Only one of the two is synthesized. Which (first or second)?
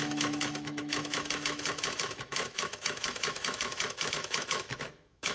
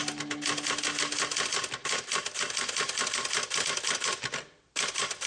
first